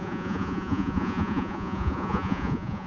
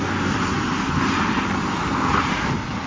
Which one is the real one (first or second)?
second